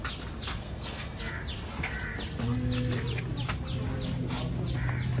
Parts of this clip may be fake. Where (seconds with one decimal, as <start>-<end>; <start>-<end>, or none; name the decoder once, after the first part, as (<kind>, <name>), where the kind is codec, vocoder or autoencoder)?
0.6-1.3 (codec, SNAC)